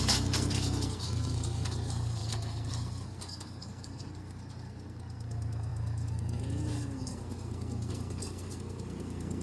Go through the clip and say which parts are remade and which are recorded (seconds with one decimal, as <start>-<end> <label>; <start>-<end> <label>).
0.0-9.4 remade